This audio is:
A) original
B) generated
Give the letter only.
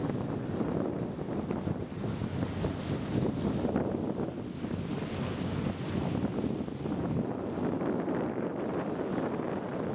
A